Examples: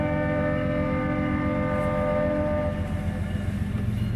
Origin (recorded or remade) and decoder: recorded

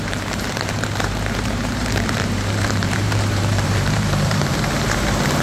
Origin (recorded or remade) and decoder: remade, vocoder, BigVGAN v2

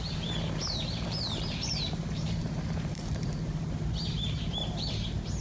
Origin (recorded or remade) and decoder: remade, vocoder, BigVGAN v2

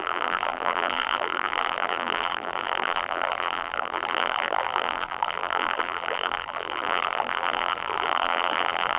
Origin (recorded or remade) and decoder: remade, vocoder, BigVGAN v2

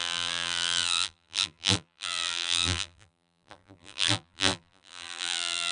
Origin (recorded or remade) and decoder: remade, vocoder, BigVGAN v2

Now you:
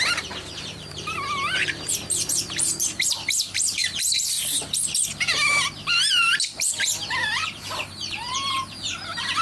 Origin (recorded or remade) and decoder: remade, vocoder, BigVGAN v2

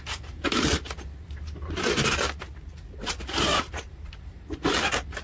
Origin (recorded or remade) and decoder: remade, vocoder, BigVGAN v2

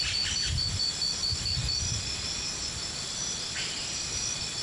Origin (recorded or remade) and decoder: recorded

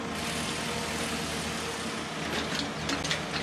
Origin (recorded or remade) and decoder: recorded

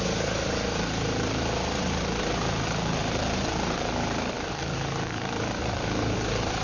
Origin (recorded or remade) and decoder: remade, vocoder, BigVGAN v2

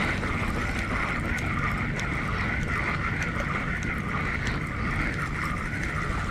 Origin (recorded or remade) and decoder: recorded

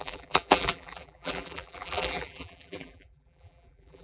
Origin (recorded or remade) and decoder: remade, vocoder, BigVGAN v2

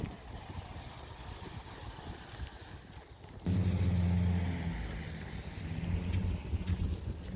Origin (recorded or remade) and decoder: recorded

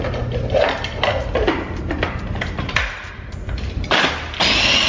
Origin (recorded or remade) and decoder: recorded